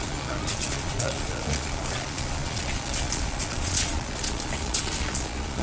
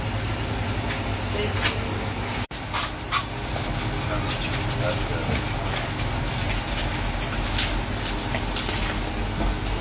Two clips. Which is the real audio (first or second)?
second